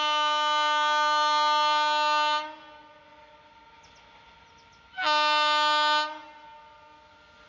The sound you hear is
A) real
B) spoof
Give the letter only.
A